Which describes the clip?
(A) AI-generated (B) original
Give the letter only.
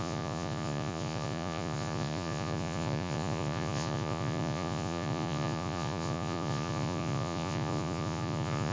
A